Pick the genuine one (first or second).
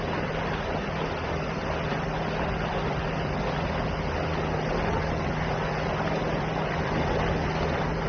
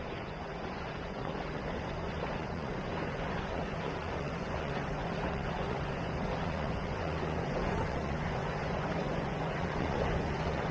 first